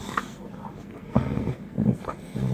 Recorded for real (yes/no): no